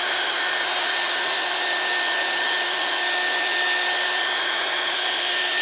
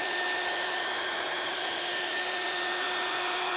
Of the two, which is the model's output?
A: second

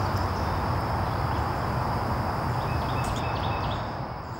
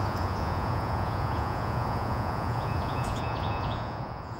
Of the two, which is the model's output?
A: second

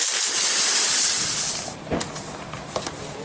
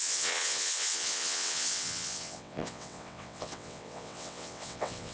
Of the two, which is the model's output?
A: second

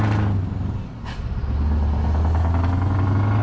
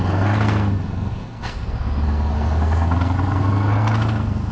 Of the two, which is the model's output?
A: second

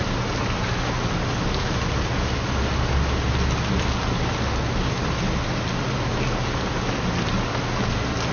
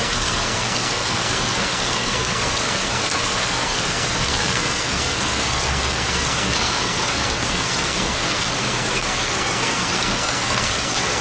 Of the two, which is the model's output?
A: second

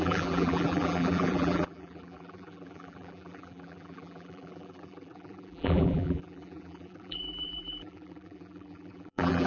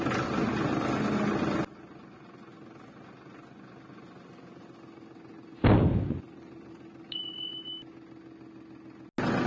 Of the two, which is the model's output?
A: first